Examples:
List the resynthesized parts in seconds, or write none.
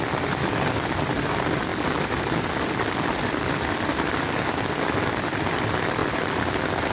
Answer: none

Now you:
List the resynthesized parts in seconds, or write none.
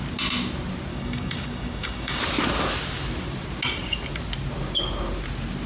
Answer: 0.9-2.2 (codec, DAC)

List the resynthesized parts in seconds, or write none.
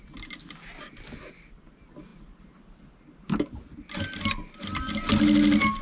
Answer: none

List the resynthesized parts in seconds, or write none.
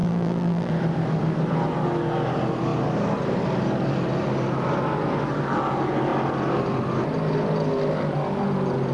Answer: 0.0-0.7 (vocoder, BigVGAN v2)